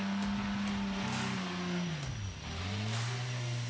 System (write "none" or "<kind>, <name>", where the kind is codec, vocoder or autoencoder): none